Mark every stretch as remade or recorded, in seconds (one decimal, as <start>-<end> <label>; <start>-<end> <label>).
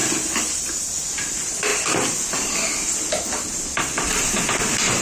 0.0-5.0 recorded